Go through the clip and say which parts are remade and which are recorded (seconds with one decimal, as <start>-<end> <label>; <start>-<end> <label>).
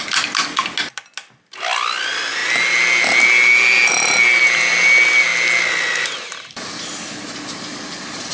0.0-8.3 recorded